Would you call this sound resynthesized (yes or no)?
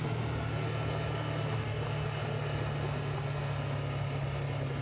no